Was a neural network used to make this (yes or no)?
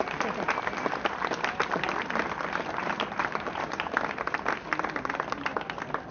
no